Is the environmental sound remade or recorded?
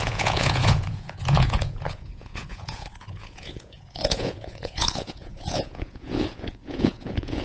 remade